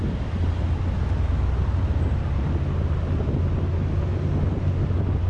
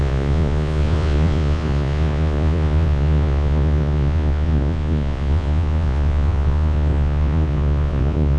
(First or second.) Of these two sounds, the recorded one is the first